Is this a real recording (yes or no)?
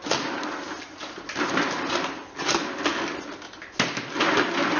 yes